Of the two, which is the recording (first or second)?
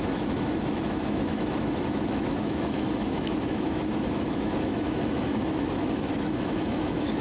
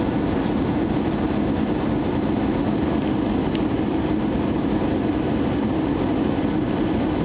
second